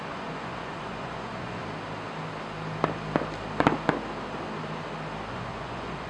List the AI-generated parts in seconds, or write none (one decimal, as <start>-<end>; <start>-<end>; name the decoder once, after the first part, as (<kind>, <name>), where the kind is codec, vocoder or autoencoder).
0.0-1.6 (vocoder, Vocos); 5.3-6.1